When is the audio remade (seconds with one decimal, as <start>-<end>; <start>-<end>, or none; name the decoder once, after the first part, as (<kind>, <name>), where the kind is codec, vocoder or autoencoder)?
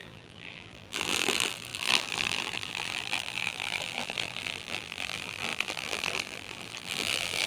0.0-7.5 (vocoder, BigVGAN v2)